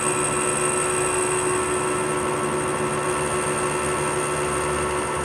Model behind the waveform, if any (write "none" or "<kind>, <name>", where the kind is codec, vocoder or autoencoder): none